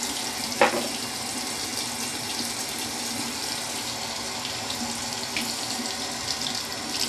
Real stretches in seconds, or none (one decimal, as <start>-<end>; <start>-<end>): 0.0-7.1